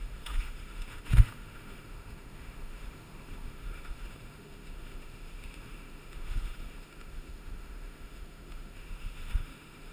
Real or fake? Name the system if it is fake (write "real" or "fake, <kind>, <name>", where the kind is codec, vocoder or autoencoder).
fake, autoencoder, DAC-VAE